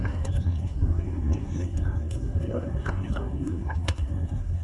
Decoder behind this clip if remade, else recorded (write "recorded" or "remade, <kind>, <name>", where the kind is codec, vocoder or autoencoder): remade, codec, SNAC